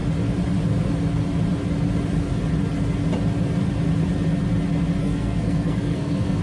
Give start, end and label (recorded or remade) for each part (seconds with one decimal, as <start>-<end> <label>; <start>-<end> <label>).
0.0-5.0 recorded; 5.0-6.4 remade